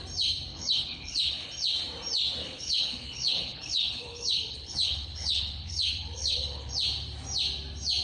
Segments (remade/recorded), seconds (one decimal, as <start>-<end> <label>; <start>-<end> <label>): 0.0-0.5 recorded; 0.5-1.5 remade; 1.5-2.4 recorded; 2.4-6.7 remade; 6.7-8.0 recorded